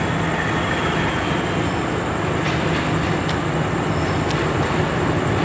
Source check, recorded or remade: recorded